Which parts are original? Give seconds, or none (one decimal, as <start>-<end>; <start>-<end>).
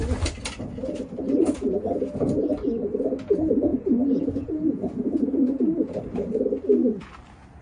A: 0.0-3.7; 6.0-7.6